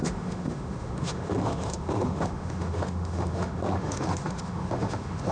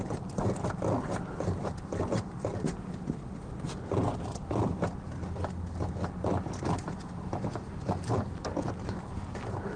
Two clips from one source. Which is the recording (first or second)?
second